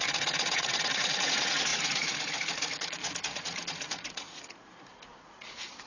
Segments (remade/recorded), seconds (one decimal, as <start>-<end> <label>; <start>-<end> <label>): 0.0-5.9 remade